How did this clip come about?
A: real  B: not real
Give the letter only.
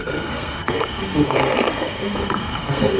B